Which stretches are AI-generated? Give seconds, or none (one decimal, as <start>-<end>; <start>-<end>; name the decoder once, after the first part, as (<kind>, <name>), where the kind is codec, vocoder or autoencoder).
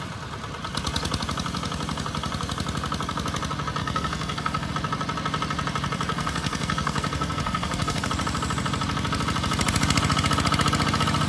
3.8-4.7 (codec, SNAC); 6.1-8.1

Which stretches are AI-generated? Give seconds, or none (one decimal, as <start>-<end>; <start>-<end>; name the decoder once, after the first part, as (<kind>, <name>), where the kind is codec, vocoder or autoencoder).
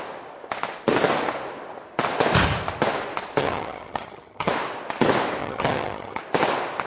3.4-4.5 (vocoder, HiFi-GAN); 5.4-6.2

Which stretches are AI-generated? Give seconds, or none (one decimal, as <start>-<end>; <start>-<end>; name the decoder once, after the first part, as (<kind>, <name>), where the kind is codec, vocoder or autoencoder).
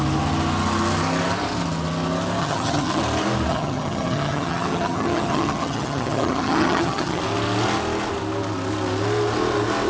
2.4-3.0 (vocoder, HiFi-GAN); 3.5-7.2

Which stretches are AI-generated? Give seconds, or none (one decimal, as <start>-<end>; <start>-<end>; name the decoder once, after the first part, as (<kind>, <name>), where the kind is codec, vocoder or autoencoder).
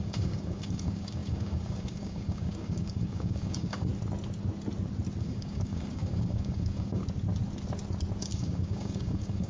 0.0-3.9 (codec, DAC); 5.2-7.0; 8.2-9.5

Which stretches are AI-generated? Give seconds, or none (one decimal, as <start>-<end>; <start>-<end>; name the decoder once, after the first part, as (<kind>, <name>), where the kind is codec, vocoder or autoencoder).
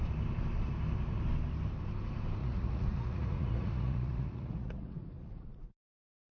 2.4-6.3 (vocoder, Vocos)